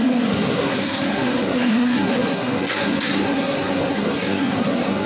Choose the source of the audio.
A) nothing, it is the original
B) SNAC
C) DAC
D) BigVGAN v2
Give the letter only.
B